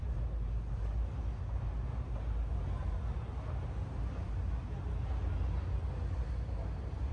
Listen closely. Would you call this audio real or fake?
real